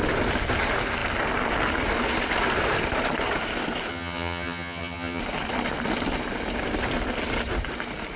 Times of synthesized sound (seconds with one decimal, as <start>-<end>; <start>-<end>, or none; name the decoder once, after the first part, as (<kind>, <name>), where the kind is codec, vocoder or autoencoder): 3.9-5.2 (vocoder, HiFi-GAN)